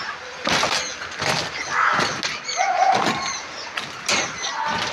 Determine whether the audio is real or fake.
real